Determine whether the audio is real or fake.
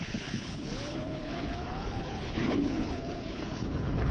fake